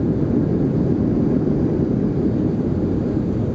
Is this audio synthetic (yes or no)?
no